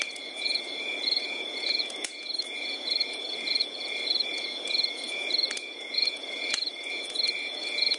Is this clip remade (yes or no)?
yes